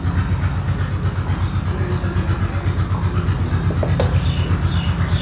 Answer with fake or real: real